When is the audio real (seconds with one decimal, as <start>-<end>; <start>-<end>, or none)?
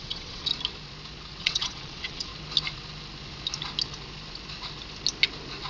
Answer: 0.5-1.4; 2.3-5.7